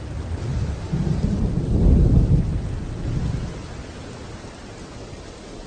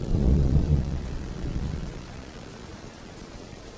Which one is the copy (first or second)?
second